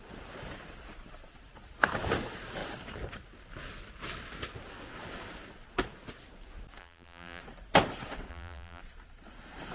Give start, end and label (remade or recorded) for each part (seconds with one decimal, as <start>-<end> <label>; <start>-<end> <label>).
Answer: 0.0-6.8 recorded; 6.8-7.4 remade; 7.4-8.3 recorded; 8.3-8.8 remade; 8.8-9.7 recorded

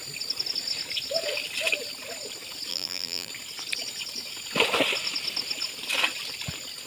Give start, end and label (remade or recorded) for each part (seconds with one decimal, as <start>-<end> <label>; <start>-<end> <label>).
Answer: 0.0-2.7 recorded; 2.7-3.3 remade; 3.3-6.9 recorded

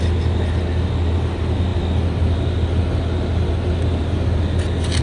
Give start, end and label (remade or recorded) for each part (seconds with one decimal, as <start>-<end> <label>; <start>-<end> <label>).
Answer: 0.0-5.0 recorded